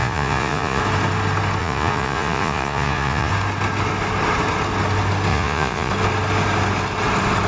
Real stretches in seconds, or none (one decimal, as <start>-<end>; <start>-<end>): 0.8-1.6; 3.3-5.3; 5.9-7.5